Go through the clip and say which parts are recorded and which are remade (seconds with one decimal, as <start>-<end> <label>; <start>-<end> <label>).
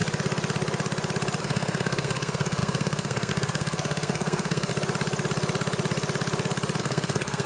0.0-1.4 recorded; 1.4-4.7 remade; 4.7-6.8 recorded; 6.8-7.5 remade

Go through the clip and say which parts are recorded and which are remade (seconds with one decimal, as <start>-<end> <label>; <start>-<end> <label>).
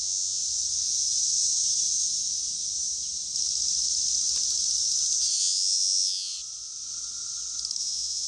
0.0-0.4 remade; 0.4-5.4 recorded; 5.4-6.3 remade; 6.3-7.8 recorded; 7.8-8.3 remade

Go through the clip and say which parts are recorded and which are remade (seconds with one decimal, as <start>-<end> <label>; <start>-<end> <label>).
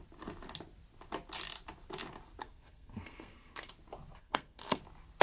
0.0-2.4 recorded; 2.4-3.7 remade; 3.7-4.2 recorded; 4.2-4.8 remade; 4.8-5.2 recorded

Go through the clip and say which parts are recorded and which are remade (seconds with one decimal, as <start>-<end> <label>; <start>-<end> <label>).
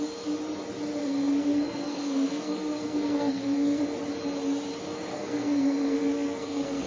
0.0-1.0 recorded; 1.0-3.8 remade; 3.8-5.1 recorded; 5.1-6.9 remade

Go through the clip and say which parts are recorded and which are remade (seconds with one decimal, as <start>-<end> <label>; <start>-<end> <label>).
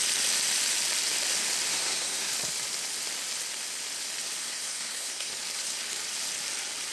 0.0-1.7 recorded; 1.7-2.3 remade; 2.3-4.4 recorded; 4.4-5.3 remade; 5.3-6.9 recorded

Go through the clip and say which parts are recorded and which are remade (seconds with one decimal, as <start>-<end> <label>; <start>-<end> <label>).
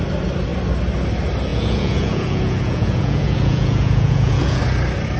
0.0-1.5 recorded; 1.5-4.6 remade; 4.6-5.2 recorded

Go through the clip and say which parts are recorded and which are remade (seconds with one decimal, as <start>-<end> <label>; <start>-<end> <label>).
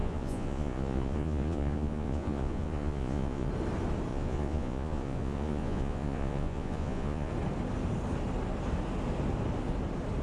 0.0-3.5 remade; 3.5-4.1 recorded; 4.1-7.3 remade; 7.3-10.2 recorded